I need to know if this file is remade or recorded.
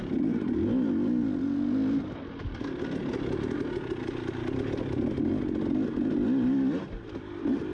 recorded